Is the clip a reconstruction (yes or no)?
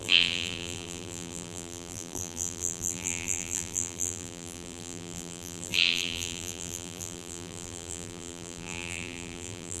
yes